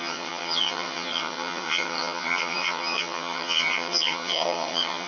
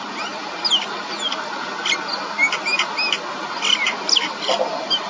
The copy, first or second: first